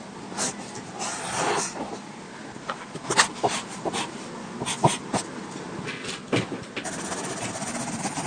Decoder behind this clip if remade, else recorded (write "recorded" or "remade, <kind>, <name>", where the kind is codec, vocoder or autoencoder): recorded